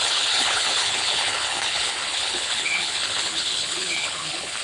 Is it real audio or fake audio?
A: fake